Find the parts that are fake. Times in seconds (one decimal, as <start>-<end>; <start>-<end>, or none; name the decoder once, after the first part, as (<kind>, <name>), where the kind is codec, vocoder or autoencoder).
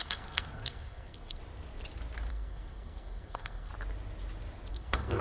0.0-1.4 (codec, SNAC); 2.3-3.7; 4.7-5.2